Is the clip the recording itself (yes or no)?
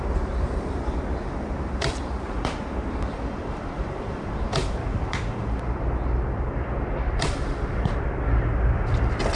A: no